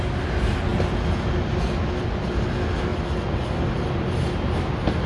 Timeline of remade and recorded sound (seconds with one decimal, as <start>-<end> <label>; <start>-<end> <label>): 0.0-5.1 recorded